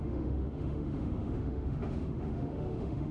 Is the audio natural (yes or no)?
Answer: no